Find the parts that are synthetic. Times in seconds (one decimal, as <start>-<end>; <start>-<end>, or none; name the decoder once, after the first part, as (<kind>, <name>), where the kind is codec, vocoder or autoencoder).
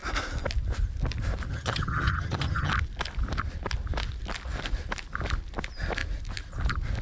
1.5-2.7 (vocoder, HiFi-GAN)